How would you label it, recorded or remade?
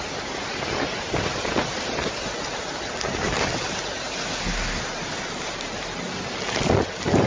recorded